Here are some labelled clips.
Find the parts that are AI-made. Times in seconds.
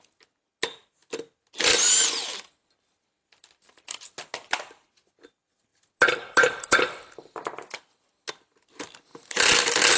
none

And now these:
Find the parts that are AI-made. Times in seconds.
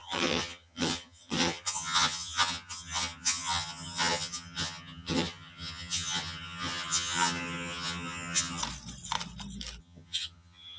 0.0-8.6; 9.8-10.8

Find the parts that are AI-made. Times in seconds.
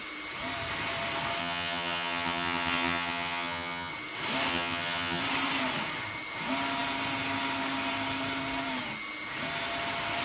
1.4-3.9; 4.5-5.2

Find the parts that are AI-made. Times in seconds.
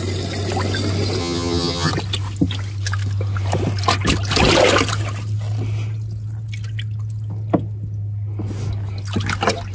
1.2-1.9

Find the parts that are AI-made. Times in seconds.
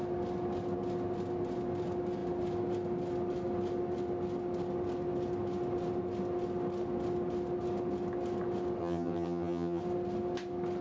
8.8-9.8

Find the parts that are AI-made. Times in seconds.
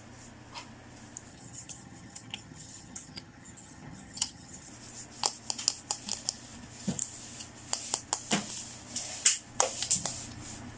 1.3-4.7